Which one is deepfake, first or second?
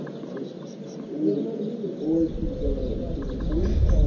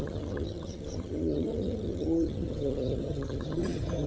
second